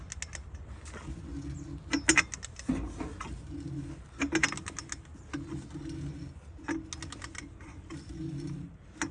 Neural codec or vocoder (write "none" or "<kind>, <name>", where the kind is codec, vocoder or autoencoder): none